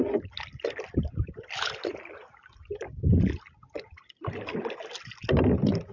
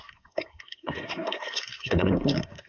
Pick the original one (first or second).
first